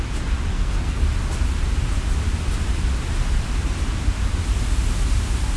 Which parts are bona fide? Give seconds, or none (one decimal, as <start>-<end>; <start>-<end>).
0.0-0.5; 1.0-5.6